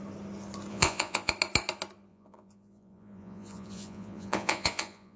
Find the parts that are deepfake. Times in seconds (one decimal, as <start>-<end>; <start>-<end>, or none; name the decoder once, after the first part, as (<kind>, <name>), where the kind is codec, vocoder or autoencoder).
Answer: 0.7-1.3 (vocoder, Vocos); 2.1-5.2